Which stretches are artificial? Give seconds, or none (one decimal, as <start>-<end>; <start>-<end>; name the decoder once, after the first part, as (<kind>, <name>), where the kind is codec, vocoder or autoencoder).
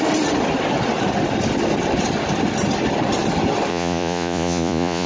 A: 3.7-5.1 (vocoder, Vocos)